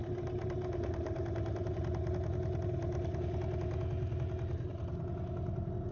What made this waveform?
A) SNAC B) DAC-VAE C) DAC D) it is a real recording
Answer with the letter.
D